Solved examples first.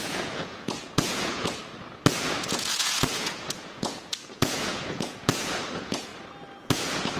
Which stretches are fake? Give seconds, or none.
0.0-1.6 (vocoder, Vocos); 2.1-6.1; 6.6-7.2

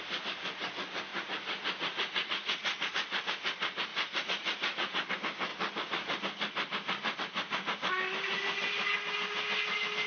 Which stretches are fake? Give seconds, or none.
1.1-2.9 (vocoder, Vocos); 3.9-5.1

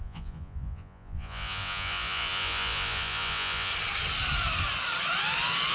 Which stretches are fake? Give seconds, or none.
0.0-3.7 (vocoder, Vocos)